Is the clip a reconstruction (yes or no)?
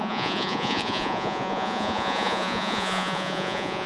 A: yes